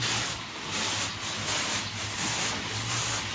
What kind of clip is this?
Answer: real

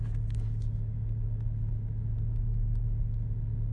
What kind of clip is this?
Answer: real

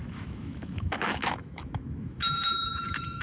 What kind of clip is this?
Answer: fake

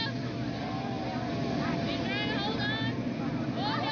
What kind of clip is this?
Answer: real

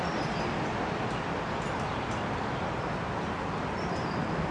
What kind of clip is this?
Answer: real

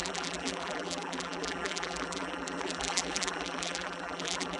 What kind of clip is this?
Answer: fake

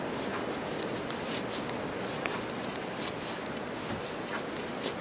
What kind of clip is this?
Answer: real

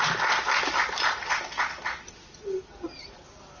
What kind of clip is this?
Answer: real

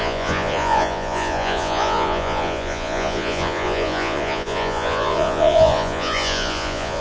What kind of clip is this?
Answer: fake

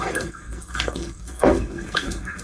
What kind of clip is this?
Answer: fake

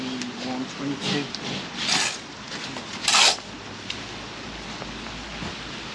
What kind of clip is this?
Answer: real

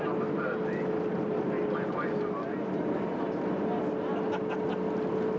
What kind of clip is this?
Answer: real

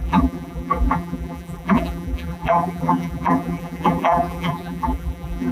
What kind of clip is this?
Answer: fake